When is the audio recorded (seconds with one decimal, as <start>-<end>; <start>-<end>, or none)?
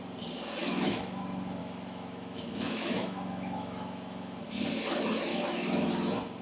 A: 0.0-0.6; 1.2-1.6; 4.5-5.3; 5.9-6.4